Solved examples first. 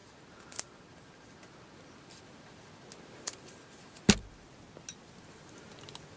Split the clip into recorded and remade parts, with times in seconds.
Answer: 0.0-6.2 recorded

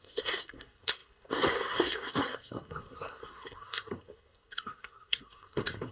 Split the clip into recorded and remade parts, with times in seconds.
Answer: 0.0-5.9 remade

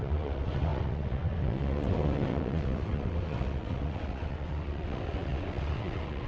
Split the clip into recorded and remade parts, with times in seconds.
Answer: 0.0-6.3 remade

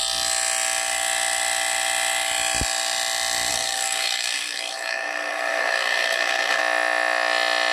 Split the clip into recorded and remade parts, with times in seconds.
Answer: 0.0-3.5 recorded; 3.5-6.6 remade; 6.6-7.7 recorded

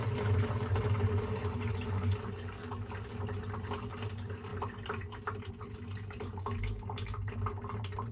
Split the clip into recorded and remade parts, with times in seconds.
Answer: 0.0-8.1 remade

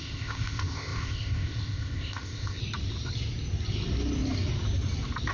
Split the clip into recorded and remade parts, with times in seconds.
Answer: 0.0-2.6 remade; 2.6-5.3 recorded

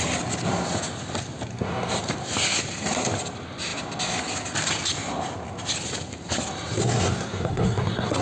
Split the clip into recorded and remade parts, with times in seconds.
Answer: 0.0-1.5 recorded; 1.5-2.0 remade; 2.0-6.8 recorded; 6.8-8.2 remade